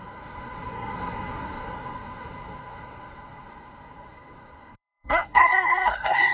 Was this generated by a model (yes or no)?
yes